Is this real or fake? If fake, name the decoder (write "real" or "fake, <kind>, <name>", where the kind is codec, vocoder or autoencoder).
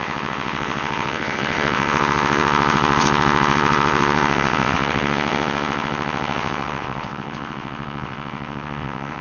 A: fake, vocoder, WaveNeXt